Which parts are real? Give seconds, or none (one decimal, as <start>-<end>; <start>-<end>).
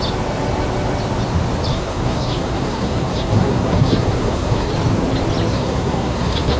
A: 0.0-1.7; 4.7-5.5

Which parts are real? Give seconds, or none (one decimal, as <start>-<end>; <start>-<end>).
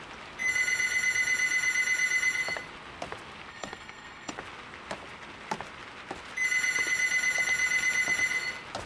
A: 0.0-3.5; 4.3-8.9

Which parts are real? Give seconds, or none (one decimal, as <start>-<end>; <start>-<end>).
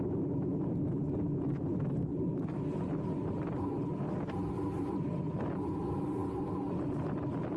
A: 0.0-7.6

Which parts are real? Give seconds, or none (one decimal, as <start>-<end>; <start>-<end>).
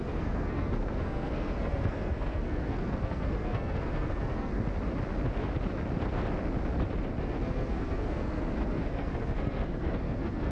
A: 4.5-7.2